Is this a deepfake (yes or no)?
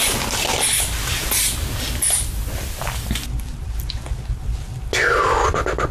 no